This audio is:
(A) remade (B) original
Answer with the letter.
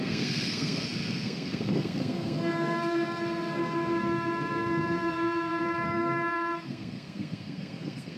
A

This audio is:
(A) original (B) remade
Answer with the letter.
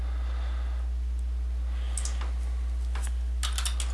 A